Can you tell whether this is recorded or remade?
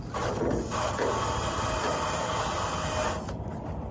recorded